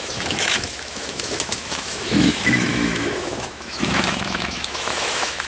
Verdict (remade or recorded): remade